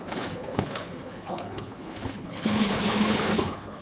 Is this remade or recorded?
remade